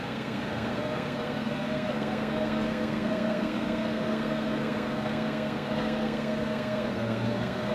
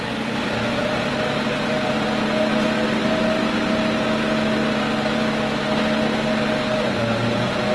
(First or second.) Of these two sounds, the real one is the second